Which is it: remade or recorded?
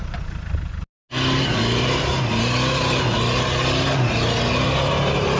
recorded